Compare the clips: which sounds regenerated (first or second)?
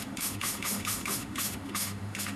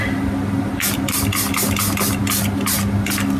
first